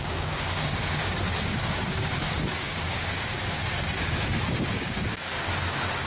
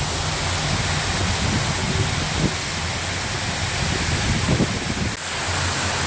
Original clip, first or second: second